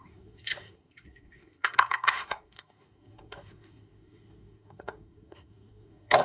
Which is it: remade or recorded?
remade